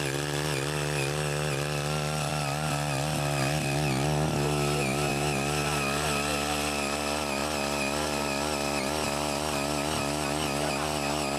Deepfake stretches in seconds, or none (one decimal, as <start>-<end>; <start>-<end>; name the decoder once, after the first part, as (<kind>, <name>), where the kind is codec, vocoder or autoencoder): none